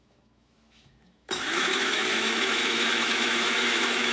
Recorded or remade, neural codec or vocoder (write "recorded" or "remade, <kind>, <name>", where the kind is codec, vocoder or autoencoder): remade, autoencoder, DAC-VAE